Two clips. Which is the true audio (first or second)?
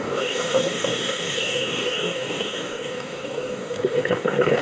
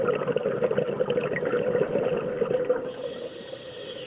second